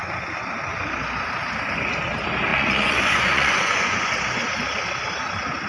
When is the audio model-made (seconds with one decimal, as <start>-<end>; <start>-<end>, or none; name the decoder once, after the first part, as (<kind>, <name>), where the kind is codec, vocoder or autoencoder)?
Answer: 2.5-4.1 (vocoder, Vocos)

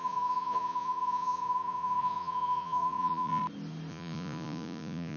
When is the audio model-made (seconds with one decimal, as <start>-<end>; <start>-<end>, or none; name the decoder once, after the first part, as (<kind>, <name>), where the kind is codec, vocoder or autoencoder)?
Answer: 0.0-3.4 (vocoder, Vocos); 3.9-5.2

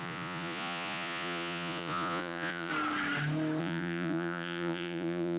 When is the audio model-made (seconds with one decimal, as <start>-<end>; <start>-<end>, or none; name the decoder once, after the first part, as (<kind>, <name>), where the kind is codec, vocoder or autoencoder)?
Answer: 0.0-2.7 (vocoder, Vocos); 3.6-5.4

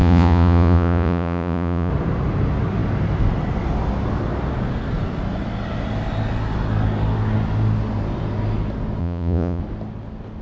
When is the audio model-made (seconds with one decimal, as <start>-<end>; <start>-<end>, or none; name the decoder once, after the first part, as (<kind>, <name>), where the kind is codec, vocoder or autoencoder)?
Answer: 0.0-1.9 (vocoder, Vocos); 9.0-9.6